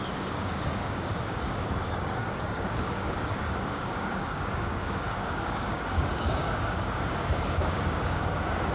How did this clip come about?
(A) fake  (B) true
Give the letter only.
A